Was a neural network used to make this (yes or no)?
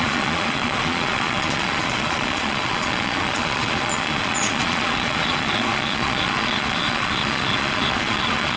yes